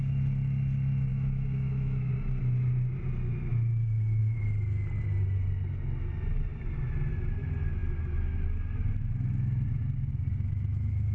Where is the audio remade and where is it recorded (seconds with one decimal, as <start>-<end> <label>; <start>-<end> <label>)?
0.0-1.1 recorded; 1.1-2.1 remade; 2.1-11.1 recorded